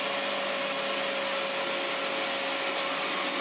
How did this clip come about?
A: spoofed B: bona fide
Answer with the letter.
B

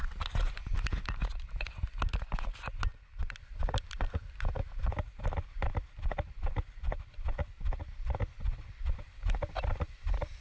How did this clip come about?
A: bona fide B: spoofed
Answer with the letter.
A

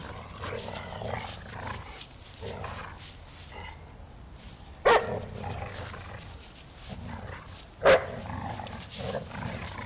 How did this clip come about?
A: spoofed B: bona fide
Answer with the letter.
B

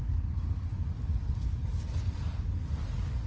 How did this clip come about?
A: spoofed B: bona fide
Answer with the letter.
B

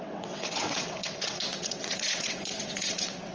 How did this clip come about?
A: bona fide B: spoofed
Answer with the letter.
B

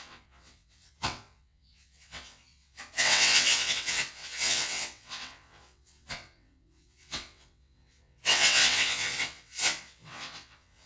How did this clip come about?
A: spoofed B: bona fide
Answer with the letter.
A